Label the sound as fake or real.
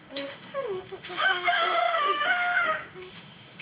fake